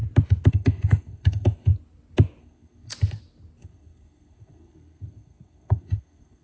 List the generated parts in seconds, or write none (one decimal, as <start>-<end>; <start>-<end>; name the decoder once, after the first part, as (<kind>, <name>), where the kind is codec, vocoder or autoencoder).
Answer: 0.5-1.7 (codec, SNAC); 2.4-2.9; 3.6-6.4